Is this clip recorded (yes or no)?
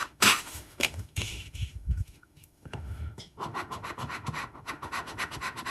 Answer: no